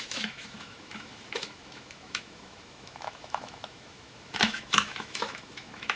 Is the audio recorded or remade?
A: remade